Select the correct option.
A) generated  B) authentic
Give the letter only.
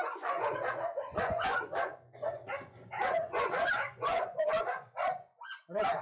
A